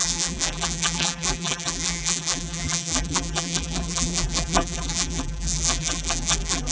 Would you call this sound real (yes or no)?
no